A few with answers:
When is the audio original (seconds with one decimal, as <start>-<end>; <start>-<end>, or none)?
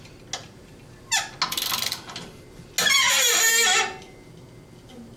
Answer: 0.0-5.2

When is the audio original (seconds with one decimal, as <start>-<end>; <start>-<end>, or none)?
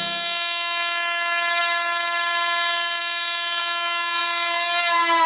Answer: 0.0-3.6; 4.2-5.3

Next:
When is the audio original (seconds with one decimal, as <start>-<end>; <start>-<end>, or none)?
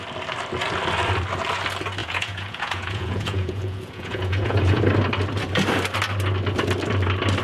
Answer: 0.0-2.0; 4.8-7.4